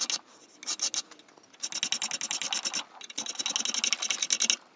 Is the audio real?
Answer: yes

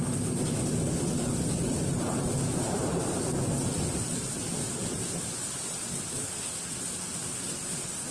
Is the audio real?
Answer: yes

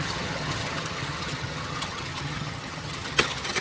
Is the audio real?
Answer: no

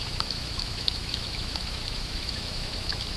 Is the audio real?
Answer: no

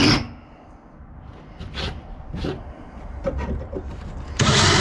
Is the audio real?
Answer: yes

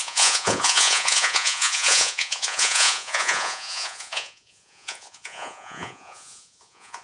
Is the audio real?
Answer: no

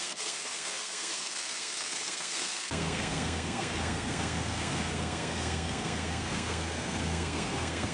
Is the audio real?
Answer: no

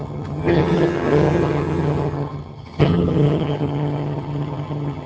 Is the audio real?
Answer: no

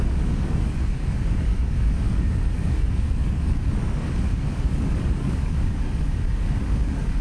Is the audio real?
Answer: no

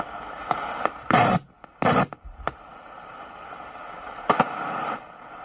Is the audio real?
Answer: no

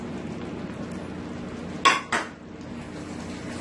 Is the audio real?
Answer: yes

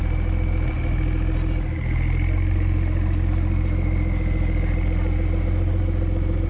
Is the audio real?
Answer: yes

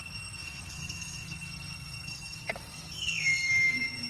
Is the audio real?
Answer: no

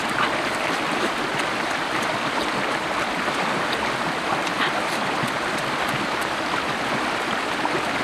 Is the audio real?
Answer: no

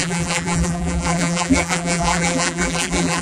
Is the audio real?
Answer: no